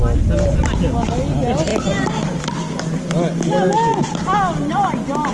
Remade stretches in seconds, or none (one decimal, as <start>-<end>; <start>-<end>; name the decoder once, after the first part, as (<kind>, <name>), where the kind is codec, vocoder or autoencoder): none